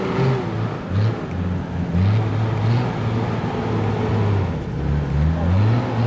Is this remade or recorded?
recorded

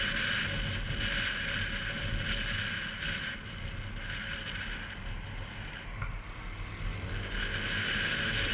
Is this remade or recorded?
recorded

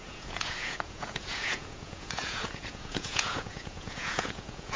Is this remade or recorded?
remade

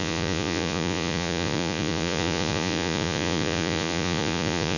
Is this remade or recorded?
remade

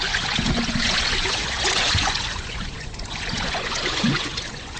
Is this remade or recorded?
remade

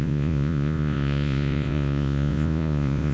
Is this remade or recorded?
remade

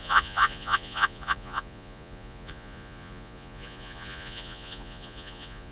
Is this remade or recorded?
remade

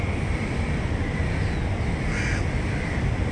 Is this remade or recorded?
recorded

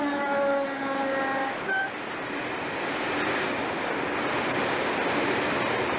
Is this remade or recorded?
recorded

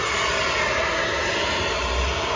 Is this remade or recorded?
recorded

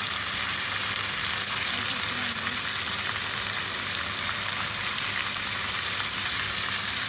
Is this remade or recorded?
recorded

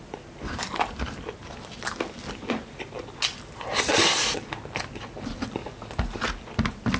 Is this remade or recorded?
recorded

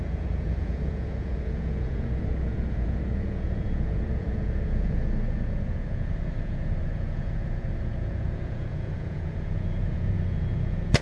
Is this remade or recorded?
remade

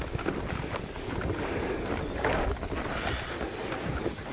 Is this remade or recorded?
recorded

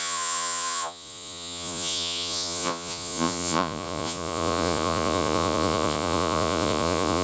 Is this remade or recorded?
remade